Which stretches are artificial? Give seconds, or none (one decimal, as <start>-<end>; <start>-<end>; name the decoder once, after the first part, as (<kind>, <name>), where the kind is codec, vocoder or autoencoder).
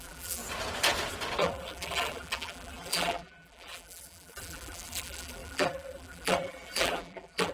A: 0.0-0.4 (vocoder, BigVGAN v2); 1.4-7.5